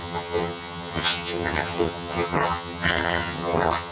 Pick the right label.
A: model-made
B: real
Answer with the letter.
A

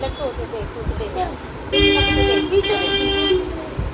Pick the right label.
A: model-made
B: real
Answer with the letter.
B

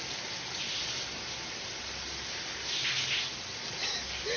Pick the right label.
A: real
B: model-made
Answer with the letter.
A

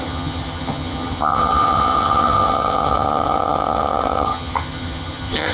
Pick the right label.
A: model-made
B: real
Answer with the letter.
A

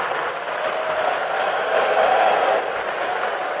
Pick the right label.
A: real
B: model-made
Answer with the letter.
A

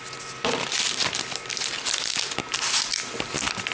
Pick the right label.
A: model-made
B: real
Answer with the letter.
B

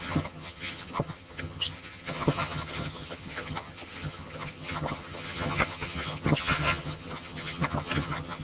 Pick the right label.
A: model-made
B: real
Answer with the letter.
A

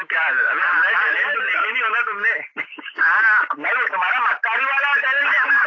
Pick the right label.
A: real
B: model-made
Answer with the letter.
A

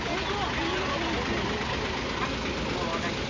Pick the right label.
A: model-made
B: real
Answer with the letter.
B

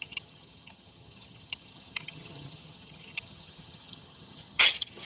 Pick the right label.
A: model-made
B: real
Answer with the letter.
A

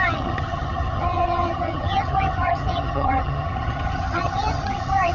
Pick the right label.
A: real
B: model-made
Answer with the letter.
B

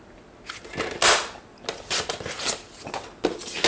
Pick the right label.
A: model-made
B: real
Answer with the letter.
B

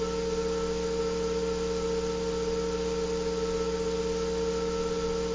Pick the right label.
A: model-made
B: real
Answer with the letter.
B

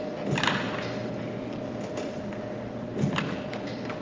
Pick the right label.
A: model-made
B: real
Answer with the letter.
B